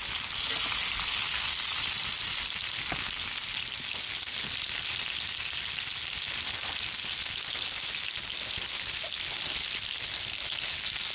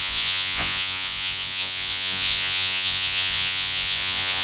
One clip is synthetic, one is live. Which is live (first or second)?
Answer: first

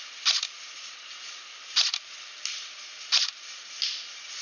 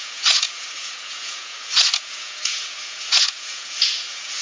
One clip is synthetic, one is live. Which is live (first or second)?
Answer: first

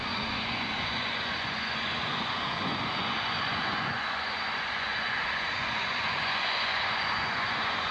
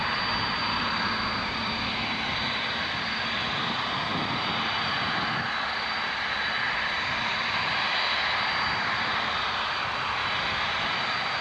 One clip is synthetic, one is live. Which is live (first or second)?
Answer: second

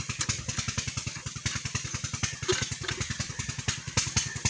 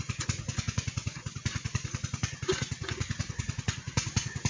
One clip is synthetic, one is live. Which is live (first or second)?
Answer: first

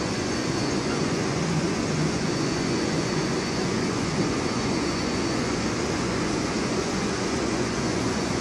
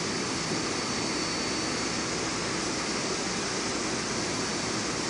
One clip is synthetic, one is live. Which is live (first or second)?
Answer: second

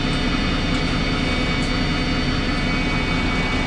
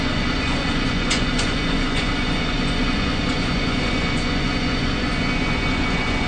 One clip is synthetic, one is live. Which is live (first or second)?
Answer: first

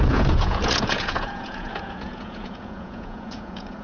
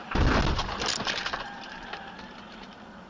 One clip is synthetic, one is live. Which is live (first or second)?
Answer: second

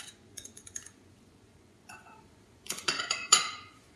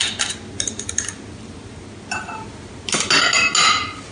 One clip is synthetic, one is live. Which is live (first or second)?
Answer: second